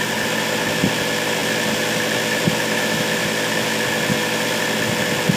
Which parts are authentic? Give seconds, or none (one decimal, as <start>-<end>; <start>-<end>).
0.0-5.4